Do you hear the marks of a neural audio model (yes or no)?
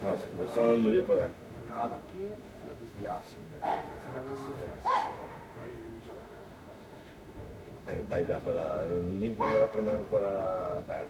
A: yes